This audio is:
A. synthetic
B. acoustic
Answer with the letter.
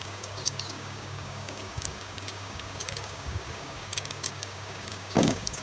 A